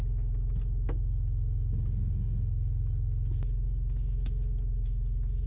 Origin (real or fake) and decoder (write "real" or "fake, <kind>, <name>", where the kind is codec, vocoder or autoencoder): real